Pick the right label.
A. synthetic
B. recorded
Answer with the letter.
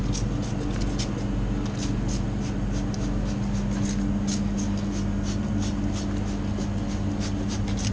B